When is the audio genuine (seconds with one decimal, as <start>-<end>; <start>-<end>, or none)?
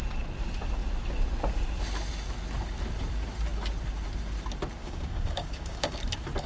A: 0.0-4.8; 6.0-6.5